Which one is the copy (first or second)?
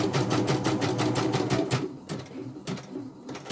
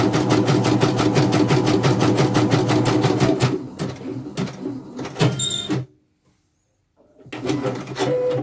first